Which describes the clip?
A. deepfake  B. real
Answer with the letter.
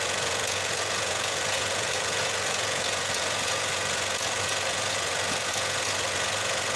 A